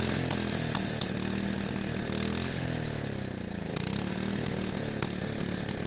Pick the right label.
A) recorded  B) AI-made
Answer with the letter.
A